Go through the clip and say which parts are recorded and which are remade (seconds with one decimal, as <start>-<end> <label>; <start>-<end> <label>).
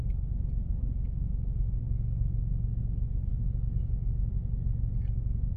0.0-3.3 remade; 3.3-5.6 recorded